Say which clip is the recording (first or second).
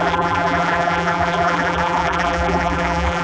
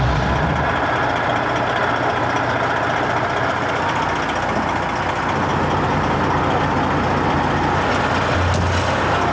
second